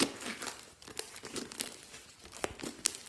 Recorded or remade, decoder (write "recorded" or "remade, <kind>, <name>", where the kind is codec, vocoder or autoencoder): recorded